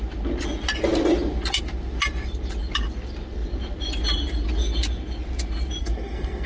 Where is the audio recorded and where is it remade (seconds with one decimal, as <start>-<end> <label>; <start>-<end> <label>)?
0.0-5.8 recorded; 5.8-6.5 remade